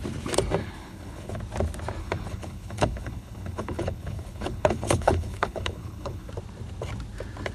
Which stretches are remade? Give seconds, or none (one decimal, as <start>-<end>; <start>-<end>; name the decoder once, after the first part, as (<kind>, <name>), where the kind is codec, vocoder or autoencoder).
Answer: 0.6-1.4 (codec, HILCodec); 2.0-6.3